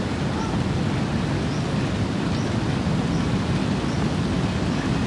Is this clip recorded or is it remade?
recorded